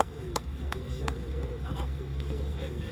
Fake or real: fake